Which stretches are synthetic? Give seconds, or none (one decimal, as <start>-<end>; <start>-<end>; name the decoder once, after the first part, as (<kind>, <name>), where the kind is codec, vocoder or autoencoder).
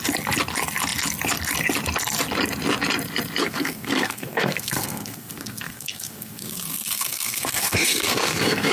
3.4-8.7 (codec, SNAC)